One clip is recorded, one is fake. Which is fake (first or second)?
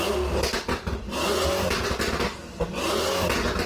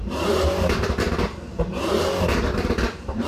second